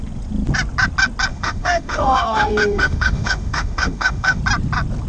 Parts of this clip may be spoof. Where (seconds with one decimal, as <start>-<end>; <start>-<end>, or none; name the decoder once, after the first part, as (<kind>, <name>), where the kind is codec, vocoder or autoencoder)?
1.3-4.4 (autoencoder, DAC-VAE)